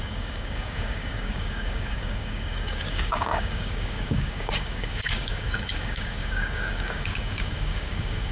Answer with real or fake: fake